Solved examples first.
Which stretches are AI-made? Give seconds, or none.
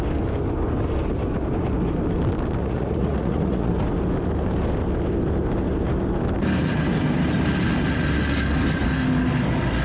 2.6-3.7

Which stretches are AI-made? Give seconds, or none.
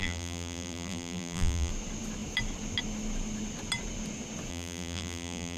0.0-1.7; 4.5-5.6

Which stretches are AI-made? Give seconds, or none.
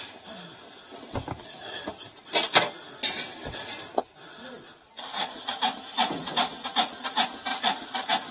4.0-5.8; 7.5-8.3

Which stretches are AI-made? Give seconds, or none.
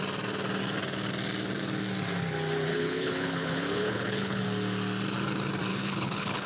2.7-4.4; 5.7-6.5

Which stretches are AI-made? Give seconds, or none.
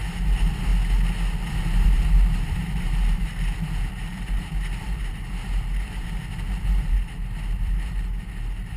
0.0-0.7; 1.5-8.8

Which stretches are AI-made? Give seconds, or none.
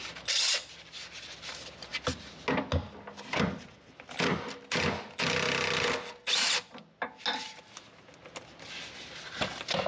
none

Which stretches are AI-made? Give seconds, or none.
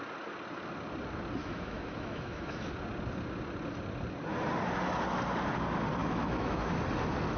1.4-2.7; 6.0-6.7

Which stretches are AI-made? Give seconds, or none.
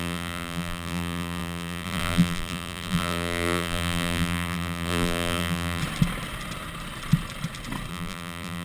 0.0-5.8; 7.9-8.6